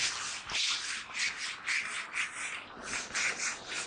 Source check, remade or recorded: recorded